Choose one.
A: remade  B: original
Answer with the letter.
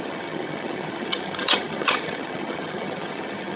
A